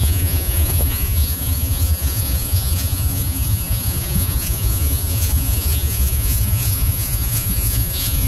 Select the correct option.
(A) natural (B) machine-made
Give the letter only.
B